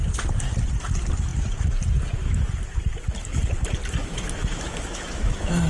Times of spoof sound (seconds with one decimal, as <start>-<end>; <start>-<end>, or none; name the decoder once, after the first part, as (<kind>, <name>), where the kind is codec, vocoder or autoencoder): 4.0-5.7 (autoencoder, DAC-VAE)